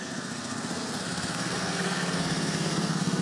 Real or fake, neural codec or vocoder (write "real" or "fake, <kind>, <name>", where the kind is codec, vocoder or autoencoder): fake, codec, SNAC